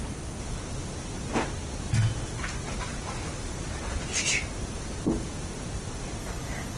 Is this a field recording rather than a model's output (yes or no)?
yes